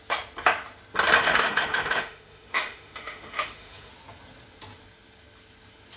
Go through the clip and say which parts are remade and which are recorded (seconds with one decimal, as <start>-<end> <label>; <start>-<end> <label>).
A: 0.0-1.2 recorded; 1.2-3.9 remade; 3.9-6.0 recorded